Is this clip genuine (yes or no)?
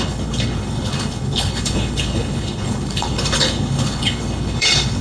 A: no